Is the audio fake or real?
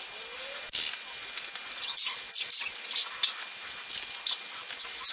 real